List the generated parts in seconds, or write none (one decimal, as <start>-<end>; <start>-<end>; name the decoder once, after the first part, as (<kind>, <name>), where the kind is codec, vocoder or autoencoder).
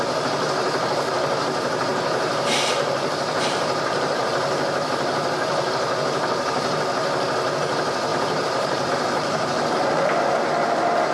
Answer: 1.9-4.2 (vocoder, BigVGAN v2); 8.1-10.2